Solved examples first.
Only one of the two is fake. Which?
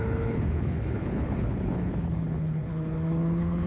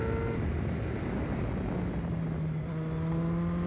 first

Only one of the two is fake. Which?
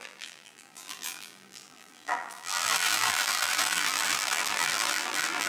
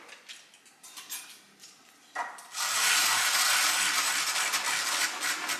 first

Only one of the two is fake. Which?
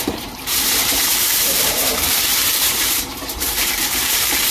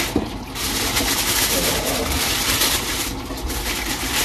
first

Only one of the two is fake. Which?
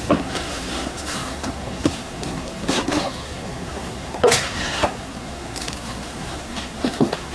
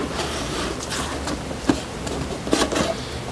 first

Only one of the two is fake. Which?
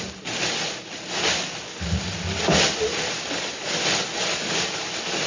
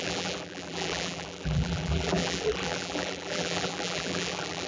second